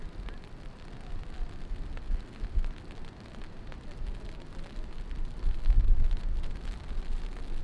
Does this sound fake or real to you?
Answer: real